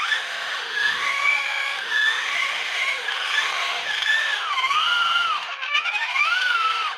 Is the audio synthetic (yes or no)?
yes